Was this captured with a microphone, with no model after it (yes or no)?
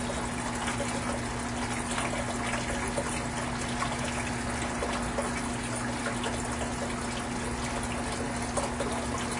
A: yes